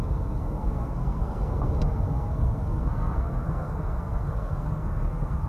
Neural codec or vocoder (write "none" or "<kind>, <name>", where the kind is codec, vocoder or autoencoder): codec, SNAC